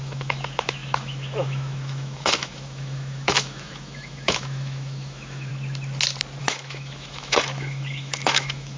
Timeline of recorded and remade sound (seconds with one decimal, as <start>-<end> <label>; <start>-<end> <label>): 0.0-5.5 remade; 5.5-6.4 recorded; 6.4-8.8 remade